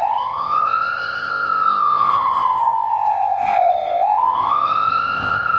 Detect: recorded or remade remade